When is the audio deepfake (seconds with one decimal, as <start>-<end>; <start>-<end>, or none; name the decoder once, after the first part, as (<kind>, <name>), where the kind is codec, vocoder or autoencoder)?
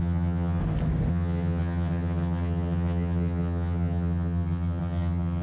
0.0-0.6 (vocoder, HiFi-GAN); 1.1-5.4